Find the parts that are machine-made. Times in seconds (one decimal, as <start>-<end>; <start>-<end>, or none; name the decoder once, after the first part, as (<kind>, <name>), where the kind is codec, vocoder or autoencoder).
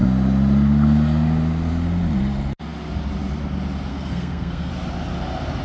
3.9-4.7 (codec, SNAC)